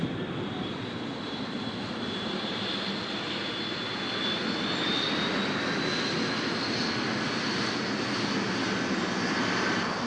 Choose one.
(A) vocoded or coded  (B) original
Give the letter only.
B